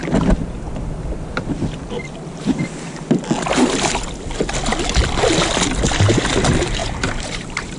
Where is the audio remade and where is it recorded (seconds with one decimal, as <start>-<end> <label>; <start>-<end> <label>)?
0.0-6.8 recorded; 6.8-7.8 remade